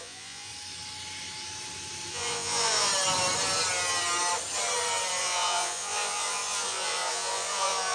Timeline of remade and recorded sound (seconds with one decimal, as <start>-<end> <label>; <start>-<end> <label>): 0.0-0.5 remade; 0.5-2.1 recorded; 2.1-2.9 remade; 2.9-5.2 recorded; 5.2-7.9 remade